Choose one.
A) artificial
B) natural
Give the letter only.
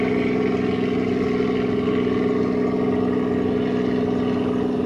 B